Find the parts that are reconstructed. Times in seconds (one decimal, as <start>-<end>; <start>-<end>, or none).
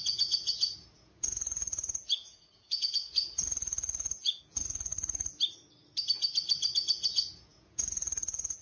0.0-4.9; 7.1-8.6